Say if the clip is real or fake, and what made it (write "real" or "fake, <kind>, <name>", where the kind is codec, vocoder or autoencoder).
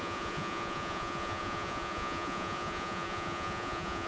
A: fake, vocoder, Vocos